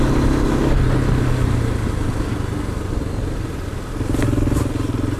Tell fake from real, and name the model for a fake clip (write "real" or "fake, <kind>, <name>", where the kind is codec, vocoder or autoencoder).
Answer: real